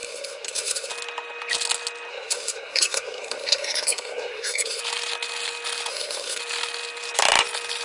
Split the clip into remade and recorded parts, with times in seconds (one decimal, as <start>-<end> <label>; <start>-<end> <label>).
0.0-0.9 remade; 0.9-2.1 recorded; 2.1-4.8 remade; 4.8-5.9 recorded; 5.9-6.4 remade; 6.4-7.8 recorded